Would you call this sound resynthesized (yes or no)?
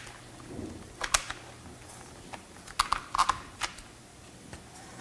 no